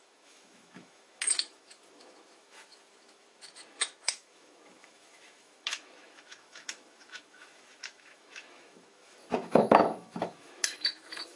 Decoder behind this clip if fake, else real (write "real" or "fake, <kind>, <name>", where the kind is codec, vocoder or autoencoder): fake, autoencoder, DAC-VAE